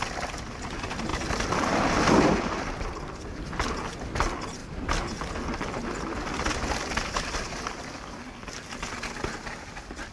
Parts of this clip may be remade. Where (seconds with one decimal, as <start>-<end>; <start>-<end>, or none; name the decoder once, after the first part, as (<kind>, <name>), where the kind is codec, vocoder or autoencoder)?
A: none